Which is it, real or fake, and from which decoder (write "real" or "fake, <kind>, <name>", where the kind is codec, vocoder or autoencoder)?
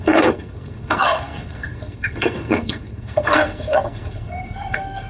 fake, codec, SNAC